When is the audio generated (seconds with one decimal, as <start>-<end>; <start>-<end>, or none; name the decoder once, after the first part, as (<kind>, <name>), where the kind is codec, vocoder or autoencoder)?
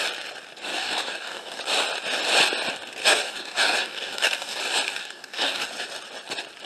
0.7-1.6 (codec, DAC); 3.0-4.6; 5.0-5.7